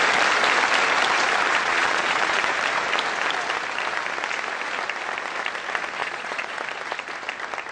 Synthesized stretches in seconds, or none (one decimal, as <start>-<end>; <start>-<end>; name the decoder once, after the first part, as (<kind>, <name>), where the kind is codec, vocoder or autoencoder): 1.6-2.4 (vocoder, Vocos); 6.0-6.6